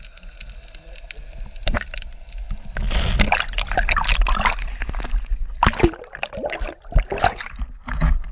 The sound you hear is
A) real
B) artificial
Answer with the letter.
A